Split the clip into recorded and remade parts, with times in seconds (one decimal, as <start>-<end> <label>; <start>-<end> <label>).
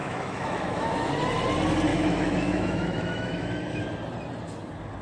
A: 0.0-1.1 remade; 1.1-1.9 recorded; 1.9-3.8 remade; 3.8-5.0 recorded